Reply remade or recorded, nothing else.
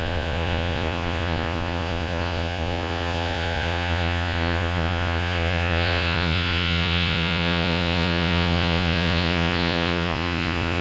remade